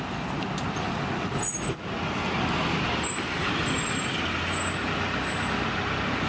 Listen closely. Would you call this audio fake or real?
real